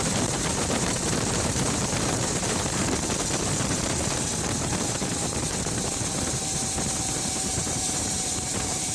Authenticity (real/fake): fake